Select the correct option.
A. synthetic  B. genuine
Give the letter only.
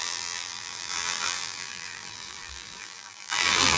A